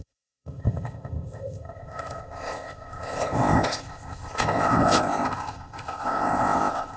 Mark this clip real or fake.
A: fake